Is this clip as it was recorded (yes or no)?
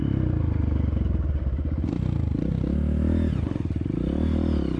yes